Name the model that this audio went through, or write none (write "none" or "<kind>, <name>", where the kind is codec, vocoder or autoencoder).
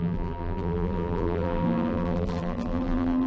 vocoder, BigVGAN v2